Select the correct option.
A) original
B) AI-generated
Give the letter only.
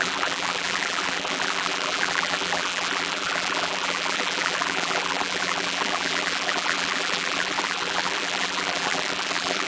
B